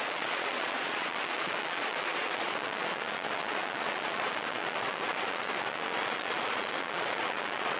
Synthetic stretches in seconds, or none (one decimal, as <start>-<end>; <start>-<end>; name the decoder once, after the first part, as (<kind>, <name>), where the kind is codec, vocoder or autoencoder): 0.0-7.8 (vocoder, Vocos)